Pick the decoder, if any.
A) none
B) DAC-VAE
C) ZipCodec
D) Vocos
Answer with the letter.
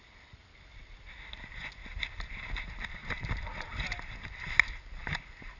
A